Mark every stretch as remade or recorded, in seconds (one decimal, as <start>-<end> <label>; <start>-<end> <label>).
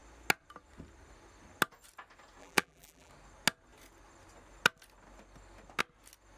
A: 0.0-2.4 recorded; 2.4-3.1 remade; 3.1-6.4 recorded